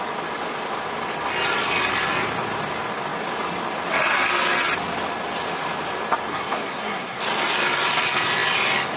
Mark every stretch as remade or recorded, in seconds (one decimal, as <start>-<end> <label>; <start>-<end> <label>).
0.0-6.3 recorded; 6.3-7.2 remade; 7.2-9.0 recorded